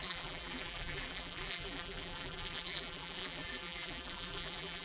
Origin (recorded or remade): remade